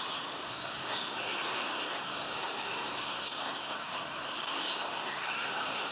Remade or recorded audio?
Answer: remade